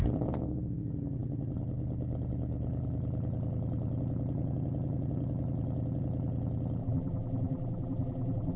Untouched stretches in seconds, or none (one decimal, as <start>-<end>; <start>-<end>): 0.0-6.8